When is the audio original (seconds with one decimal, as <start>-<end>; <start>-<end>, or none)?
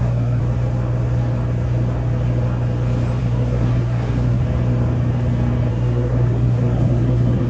0.4-3.2; 4.4-5.7